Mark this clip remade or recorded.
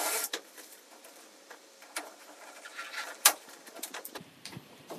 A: remade